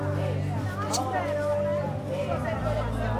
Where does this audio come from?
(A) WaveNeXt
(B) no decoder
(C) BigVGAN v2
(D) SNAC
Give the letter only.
B